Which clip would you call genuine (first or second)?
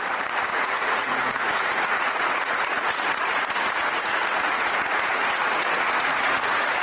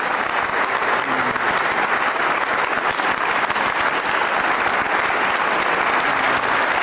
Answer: second